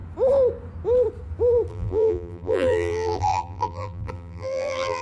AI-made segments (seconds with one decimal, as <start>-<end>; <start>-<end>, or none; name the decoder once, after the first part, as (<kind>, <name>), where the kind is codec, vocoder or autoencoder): 1.7-5.0 (vocoder, BigVGAN v2)